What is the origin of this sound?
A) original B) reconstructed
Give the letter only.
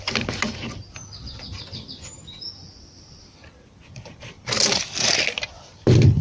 A